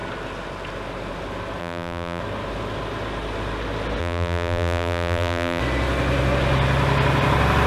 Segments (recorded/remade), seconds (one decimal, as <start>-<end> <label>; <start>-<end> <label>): 0.0-1.6 recorded; 1.6-2.2 remade; 2.2-4.0 recorded; 4.0-5.6 remade; 5.6-7.7 recorded